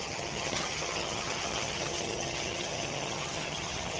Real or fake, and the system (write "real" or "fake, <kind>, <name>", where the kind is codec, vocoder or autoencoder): fake, vocoder, HiFi-GAN